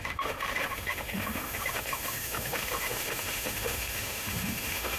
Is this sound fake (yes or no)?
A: yes